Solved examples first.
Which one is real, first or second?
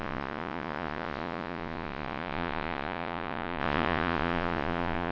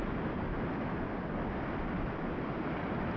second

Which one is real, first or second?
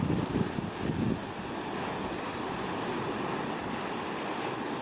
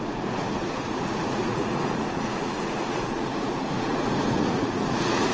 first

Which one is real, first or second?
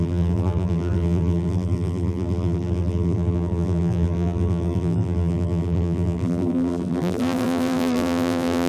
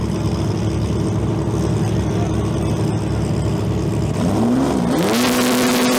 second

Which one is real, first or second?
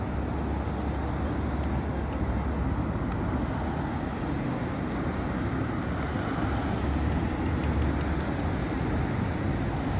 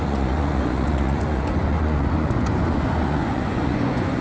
first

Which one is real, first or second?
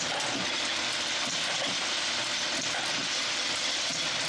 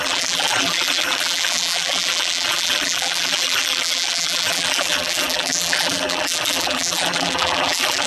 first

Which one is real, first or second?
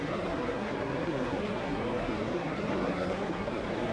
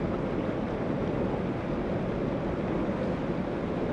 second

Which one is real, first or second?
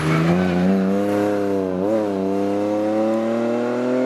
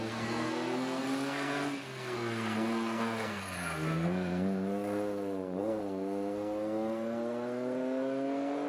first